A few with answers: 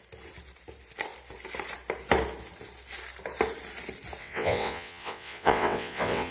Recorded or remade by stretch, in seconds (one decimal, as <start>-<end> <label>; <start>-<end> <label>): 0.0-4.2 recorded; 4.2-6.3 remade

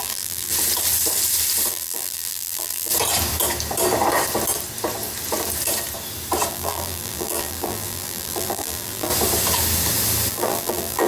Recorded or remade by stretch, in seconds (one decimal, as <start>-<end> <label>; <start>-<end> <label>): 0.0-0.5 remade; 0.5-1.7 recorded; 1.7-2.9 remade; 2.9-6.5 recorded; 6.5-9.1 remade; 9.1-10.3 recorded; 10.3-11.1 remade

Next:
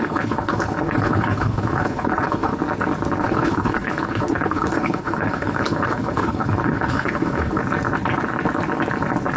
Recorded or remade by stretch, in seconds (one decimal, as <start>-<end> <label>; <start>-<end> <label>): 0.0-2.5 remade; 2.5-3.2 recorded; 3.2-7.6 remade; 7.6-9.4 recorded

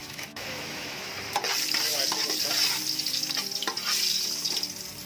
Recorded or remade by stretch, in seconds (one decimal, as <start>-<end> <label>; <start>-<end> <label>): 0.0-1.1 remade; 1.1-5.1 recorded

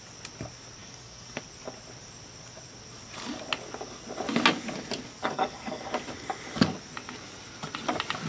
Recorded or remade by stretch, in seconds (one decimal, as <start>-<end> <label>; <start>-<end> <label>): 0.0-0.8 recorded; 0.8-1.4 remade; 1.4-5.2 recorded; 5.2-5.8 remade; 5.8-8.3 recorded